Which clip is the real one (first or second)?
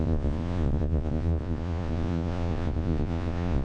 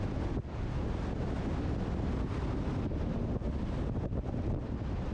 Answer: second